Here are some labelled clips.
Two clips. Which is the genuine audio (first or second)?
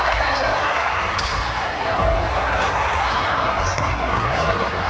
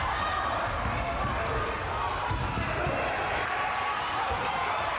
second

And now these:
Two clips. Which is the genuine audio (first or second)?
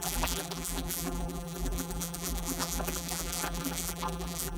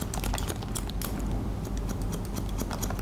second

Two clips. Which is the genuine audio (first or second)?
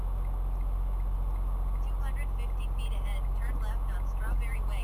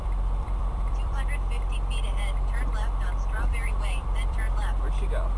first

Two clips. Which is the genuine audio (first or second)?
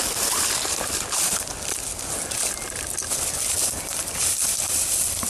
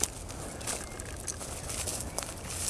second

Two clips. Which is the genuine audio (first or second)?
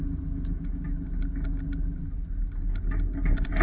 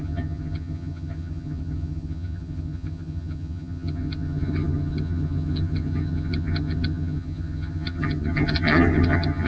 first